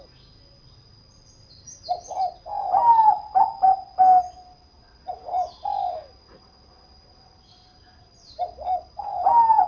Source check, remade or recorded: recorded